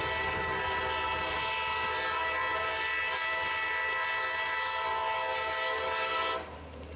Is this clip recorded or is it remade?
recorded